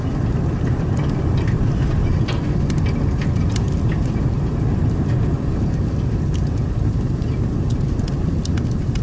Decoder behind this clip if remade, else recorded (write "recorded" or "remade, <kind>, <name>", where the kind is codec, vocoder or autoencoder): recorded